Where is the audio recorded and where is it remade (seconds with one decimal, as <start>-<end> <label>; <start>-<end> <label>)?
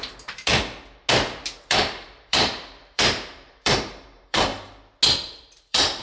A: 0.0-0.5 remade; 0.5-1.1 recorded; 1.1-4.5 remade; 4.5-5.4 recorded; 5.4-6.0 remade